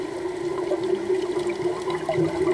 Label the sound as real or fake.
real